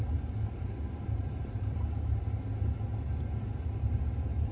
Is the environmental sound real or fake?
real